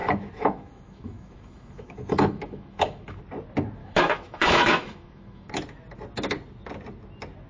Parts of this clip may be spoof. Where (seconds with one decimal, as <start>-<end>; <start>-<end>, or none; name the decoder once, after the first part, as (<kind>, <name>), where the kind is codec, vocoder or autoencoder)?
0.0-3.2 (autoencoder, DAC-VAE); 3.8-5.5